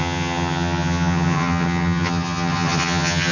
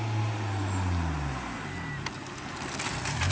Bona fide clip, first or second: second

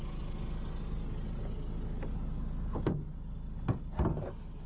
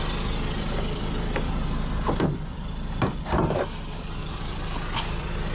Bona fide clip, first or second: first